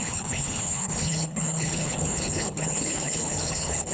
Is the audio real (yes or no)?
no